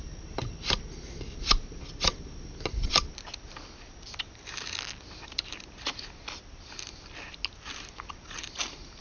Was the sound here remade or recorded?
recorded